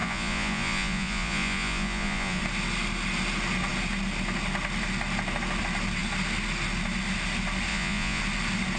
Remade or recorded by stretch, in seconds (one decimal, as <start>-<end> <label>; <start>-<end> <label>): 0.0-2.4 remade; 2.4-7.7 recorded; 7.7-8.2 remade; 8.2-8.8 recorded